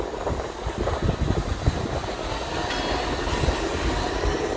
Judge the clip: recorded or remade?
recorded